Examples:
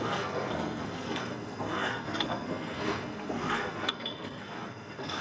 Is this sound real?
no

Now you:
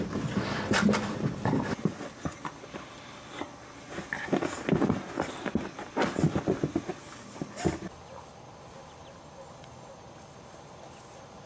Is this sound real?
yes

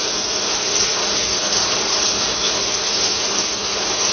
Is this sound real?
yes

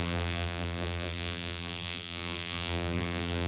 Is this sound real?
no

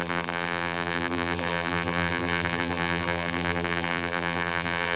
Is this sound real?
no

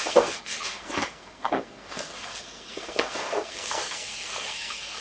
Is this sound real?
no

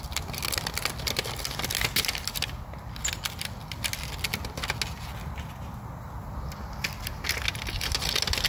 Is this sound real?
yes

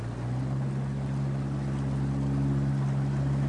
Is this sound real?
yes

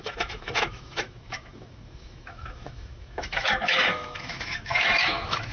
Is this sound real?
no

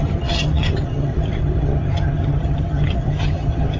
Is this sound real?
no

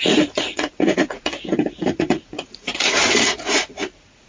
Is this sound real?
no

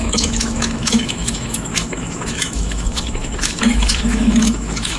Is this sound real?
no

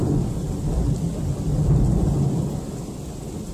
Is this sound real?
yes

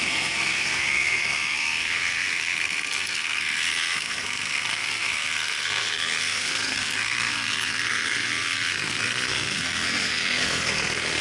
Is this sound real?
no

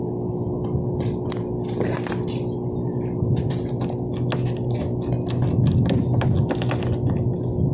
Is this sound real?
yes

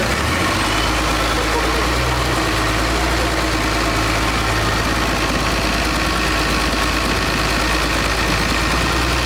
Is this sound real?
yes